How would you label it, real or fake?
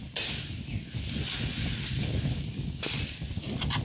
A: real